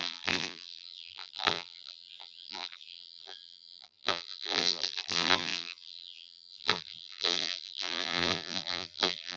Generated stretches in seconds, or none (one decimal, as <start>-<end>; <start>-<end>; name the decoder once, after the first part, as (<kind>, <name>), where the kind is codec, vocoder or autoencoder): 0.0-9.4 (vocoder, BigVGAN v2)